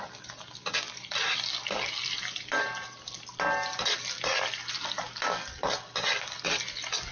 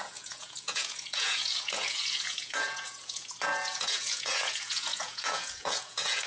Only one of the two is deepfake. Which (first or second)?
second